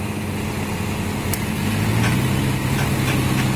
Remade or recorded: recorded